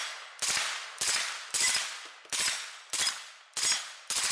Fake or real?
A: real